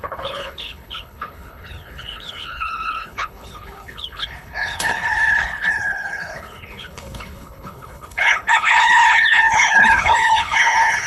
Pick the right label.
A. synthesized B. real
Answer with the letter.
A